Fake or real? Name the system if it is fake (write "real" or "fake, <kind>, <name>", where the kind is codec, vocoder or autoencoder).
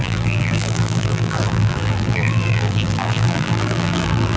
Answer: fake, vocoder, BigVGAN v2